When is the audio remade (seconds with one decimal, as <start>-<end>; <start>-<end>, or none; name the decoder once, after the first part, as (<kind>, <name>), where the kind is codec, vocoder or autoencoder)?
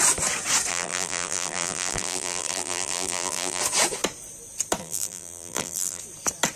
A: 0.7-3.6 (vocoder, BigVGAN v2); 4.8-6.0